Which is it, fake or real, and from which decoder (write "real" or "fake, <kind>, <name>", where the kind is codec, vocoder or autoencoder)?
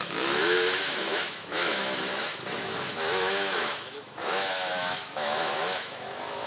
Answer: fake, autoencoder, DAC-VAE